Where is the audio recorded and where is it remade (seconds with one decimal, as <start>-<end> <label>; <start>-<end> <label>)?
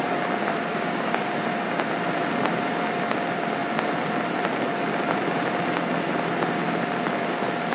0.0-0.7 recorded; 0.7-1.2 remade; 1.2-7.7 recorded